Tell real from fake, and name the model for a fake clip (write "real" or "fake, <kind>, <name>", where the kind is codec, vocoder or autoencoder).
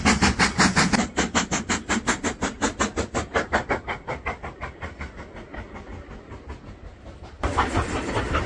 real